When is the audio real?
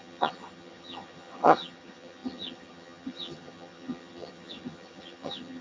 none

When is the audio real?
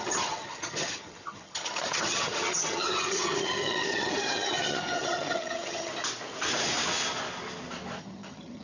5.9-8.0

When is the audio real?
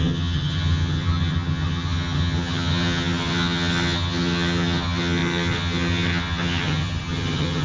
none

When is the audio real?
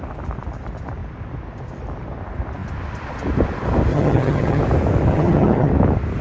0.0-3.9; 4.6-5.1; 5.7-6.2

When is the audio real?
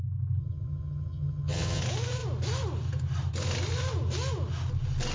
0.0-0.4; 1.8-5.1